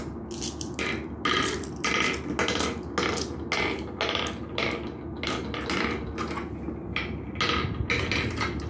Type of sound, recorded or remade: recorded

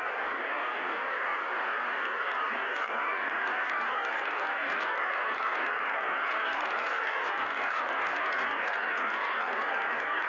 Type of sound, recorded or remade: remade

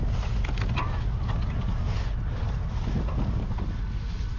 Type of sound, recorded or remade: recorded